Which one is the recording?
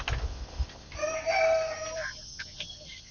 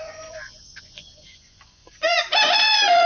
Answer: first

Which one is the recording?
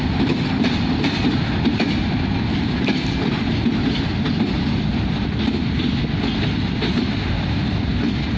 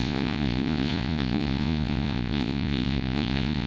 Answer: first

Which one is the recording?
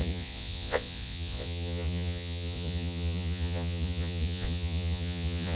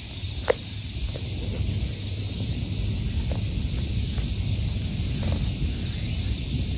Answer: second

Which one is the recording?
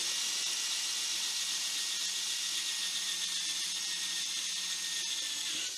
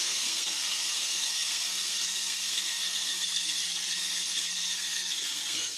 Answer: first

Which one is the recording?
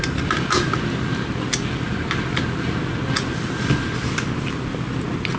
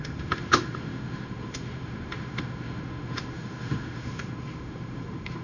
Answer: first